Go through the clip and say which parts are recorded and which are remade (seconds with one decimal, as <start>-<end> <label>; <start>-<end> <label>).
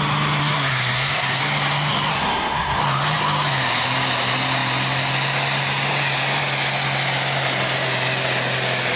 0.0-0.4 recorded; 0.4-1.4 remade; 1.4-2.1 recorded; 2.1-2.8 remade; 2.8-9.0 recorded